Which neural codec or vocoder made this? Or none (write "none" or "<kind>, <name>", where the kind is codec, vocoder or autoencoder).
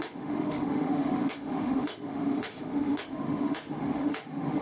autoencoder, DAC-VAE